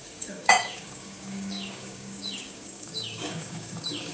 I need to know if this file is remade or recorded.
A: remade